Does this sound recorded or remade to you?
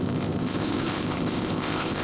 remade